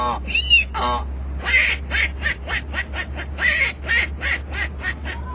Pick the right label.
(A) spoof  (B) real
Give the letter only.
B